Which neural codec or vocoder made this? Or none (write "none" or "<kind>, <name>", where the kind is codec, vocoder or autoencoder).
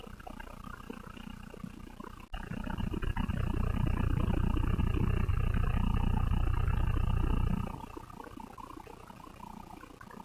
none